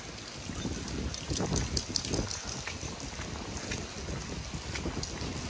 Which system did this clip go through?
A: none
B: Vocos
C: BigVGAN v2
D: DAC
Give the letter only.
A